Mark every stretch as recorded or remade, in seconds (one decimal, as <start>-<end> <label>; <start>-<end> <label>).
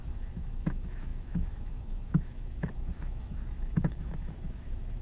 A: 0.0-5.0 remade